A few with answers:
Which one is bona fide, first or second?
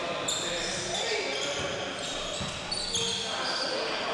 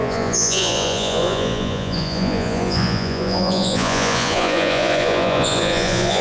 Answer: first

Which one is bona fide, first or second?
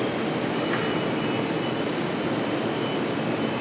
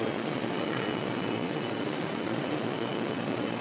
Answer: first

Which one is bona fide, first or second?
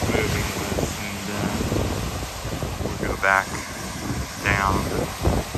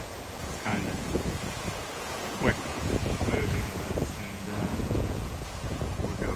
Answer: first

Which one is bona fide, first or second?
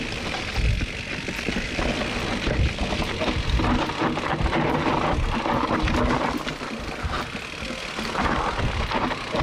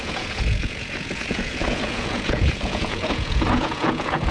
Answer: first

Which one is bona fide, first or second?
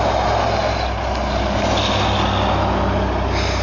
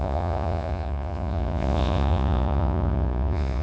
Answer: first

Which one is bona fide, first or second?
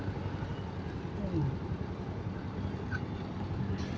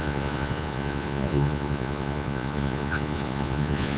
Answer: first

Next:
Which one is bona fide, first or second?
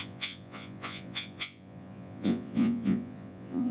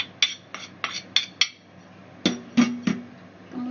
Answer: second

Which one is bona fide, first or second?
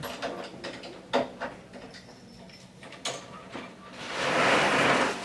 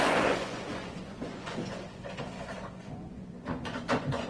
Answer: first